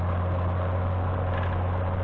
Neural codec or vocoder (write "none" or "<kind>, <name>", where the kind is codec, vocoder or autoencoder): none